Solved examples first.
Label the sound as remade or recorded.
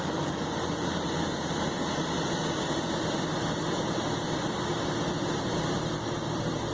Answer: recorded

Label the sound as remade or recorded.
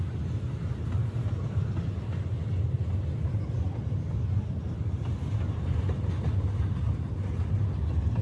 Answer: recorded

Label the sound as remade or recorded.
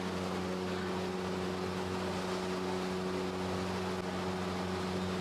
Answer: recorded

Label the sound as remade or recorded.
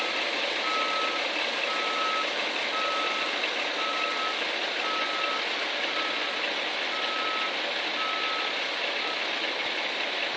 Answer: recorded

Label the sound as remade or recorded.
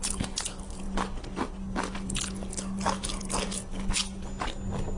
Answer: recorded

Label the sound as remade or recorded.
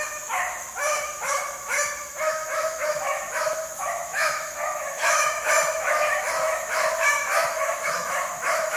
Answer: remade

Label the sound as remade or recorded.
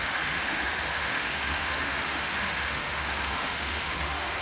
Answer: remade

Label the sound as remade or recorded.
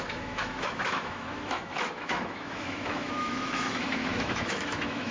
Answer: remade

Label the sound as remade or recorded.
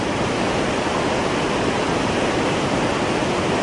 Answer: recorded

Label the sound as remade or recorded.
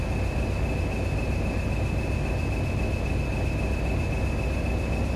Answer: recorded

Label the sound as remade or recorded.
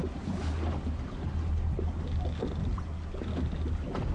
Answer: recorded